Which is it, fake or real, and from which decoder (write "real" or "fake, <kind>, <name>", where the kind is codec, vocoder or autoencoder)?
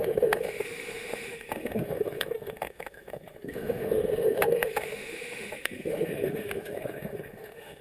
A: fake, autoencoder, DAC-VAE